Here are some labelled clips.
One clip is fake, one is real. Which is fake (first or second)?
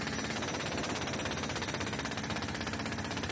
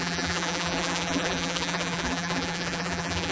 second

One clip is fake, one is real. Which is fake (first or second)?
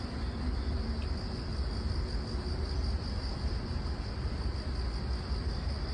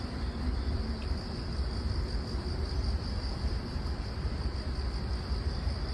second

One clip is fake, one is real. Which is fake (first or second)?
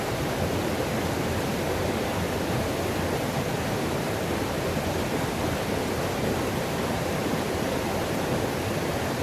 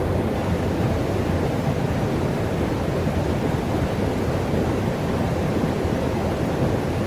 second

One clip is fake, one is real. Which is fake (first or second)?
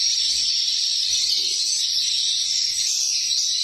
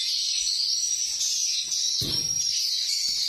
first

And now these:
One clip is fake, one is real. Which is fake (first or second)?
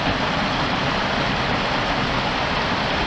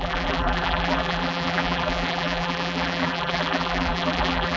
second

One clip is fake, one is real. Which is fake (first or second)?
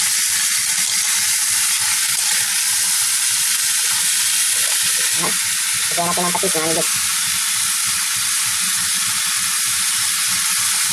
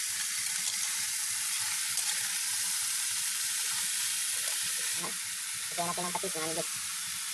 second